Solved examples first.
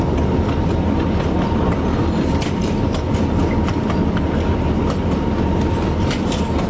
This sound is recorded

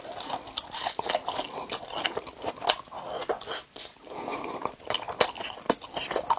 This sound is recorded